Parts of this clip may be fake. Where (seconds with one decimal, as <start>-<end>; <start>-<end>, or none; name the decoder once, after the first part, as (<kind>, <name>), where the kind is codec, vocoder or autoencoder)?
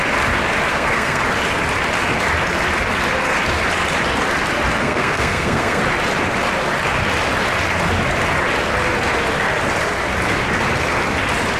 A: 0.7-1.2 (codec, SNAC); 4.8-5.8